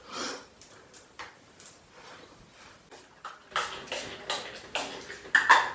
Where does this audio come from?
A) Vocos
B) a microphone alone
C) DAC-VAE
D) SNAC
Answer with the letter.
B